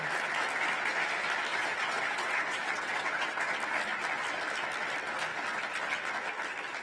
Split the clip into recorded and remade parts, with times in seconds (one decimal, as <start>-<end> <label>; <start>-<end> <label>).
0.0-1.5 recorded; 1.5-3.4 remade; 3.4-6.8 recorded